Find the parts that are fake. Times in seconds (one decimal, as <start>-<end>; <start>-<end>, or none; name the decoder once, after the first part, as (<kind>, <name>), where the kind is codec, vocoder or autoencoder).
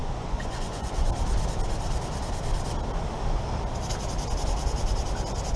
0.0-1.1 (vocoder, Vocos)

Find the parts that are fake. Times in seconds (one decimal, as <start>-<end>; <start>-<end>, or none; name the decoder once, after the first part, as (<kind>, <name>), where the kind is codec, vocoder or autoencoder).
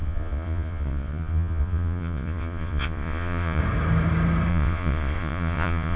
0.0-3.6 (vocoder, Vocos); 4.5-6.0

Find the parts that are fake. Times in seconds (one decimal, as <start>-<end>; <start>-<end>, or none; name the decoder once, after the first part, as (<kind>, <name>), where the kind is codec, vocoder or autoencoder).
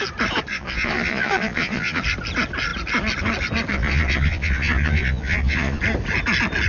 0.5-2.0 (vocoder, Vocos); 3.7-5.8